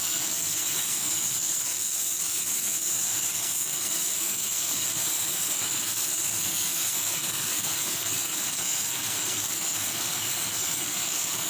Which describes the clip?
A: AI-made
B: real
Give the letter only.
A